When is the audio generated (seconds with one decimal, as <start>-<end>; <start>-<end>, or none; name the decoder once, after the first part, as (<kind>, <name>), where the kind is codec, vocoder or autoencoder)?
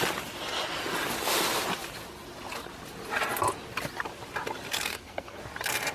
4.9-5.4 (codec, SNAC)